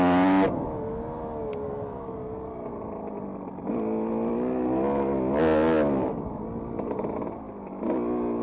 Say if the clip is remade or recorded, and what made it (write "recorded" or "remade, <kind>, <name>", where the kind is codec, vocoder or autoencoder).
recorded